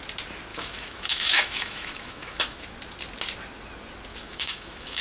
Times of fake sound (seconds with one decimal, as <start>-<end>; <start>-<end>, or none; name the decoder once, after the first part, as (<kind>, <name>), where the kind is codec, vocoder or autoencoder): 0.5-2.7 (autoencoder, DAC-VAE); 4.1-5.0